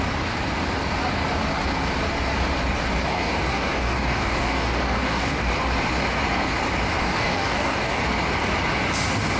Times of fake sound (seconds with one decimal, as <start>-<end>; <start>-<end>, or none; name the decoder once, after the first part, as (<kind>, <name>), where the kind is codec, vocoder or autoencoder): 3.1-5.5 (codec, DAC); 7.0-8.0